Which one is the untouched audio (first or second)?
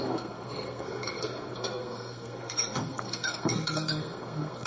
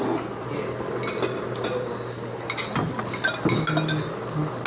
second